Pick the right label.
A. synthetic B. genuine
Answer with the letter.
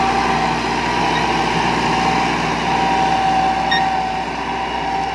B